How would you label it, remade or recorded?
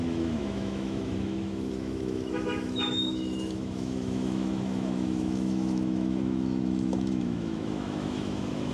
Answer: remade